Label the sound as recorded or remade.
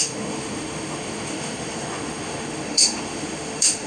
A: remade